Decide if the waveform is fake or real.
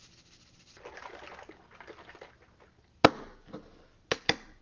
real